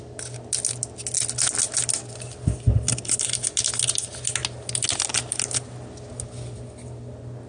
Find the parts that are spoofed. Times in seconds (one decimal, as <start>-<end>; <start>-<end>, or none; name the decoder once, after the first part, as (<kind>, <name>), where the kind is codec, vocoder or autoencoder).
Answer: none